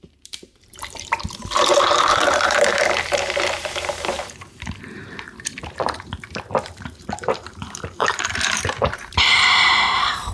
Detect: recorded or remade remade